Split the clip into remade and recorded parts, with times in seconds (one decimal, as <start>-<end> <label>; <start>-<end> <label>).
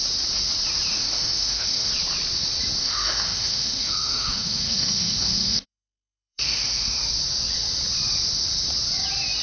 0.0-0.9 recorded; 0.9-1.9 remade; 1.9-2.8 recorded; 2.8-7.0 remade; 7.0-9.4 recorded